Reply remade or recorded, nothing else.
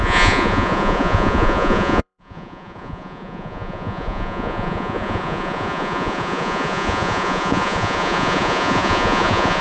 remade